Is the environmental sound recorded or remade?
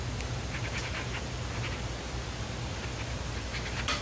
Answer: recorded